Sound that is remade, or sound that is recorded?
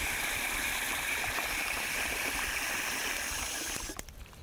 recorded